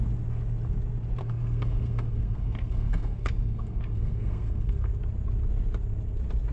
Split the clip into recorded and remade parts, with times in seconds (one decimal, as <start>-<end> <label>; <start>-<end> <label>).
0.0-1.2 recorded; 1.2-5.0 remade; 5.0-6.5 recorded